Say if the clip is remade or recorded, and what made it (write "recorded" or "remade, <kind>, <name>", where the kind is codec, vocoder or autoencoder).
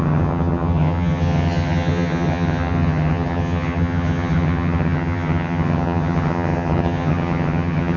remade, vocoder, HiFi-GAN